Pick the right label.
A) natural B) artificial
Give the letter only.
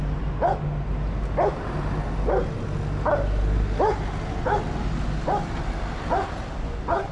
A